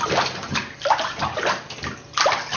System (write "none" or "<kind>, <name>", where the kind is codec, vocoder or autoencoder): none